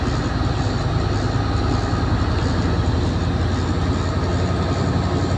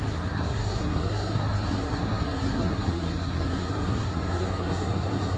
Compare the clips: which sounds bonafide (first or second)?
first